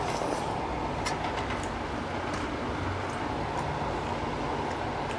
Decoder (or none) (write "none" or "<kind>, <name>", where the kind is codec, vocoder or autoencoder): none